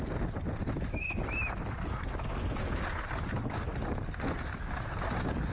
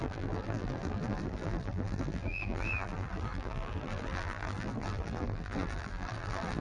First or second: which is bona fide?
first